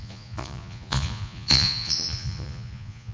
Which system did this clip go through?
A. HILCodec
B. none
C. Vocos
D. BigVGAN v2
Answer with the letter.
C